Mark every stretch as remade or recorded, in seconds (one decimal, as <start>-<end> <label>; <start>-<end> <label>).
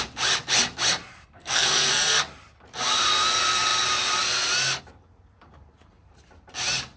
0.0-1.1 recorded; 1.1-2.2 remade; 2.2-7.0 recorded